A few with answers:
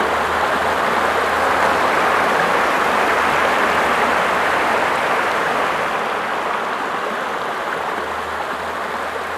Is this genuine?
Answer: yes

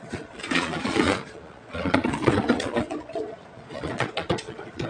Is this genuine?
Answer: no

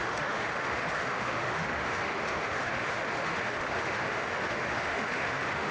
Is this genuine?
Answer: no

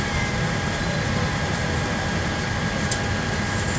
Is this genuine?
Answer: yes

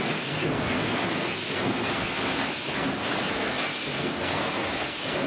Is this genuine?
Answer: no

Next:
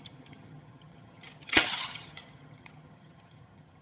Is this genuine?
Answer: no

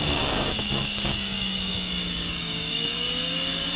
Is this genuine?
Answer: no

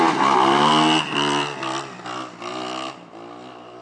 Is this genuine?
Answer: yes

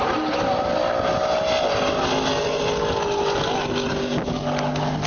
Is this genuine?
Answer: yes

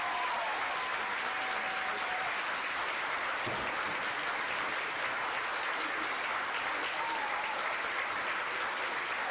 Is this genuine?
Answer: yes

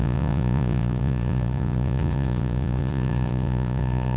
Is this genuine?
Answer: no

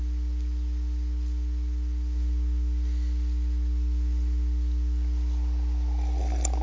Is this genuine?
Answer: yes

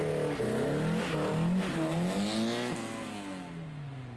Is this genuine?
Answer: yes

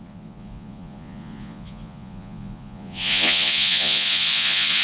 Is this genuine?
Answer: no